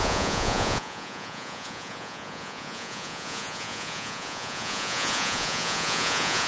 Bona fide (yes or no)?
no